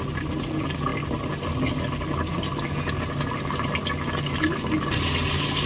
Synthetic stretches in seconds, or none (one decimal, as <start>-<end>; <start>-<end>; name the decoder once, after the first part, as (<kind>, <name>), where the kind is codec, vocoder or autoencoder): none